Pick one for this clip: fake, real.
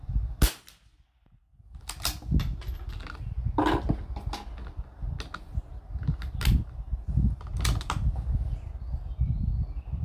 real